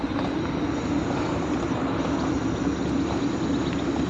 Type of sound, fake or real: real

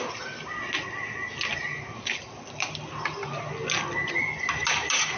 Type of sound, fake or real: real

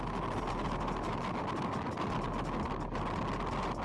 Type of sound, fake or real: real